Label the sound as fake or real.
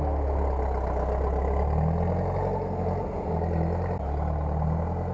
real